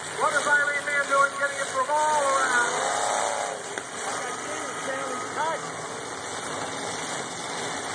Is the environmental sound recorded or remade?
recorded